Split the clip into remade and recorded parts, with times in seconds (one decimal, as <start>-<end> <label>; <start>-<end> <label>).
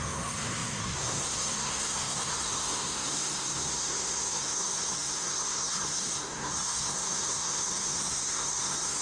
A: 0.0-9.0 remade